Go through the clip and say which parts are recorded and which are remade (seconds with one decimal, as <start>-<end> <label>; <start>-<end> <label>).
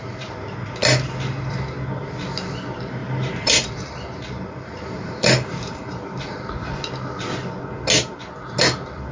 0.0-3.0 recorded; 3.0-6.2 remade; 6.2-9.1 recorded